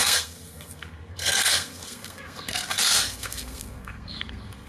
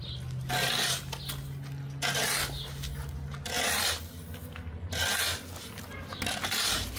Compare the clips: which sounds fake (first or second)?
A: first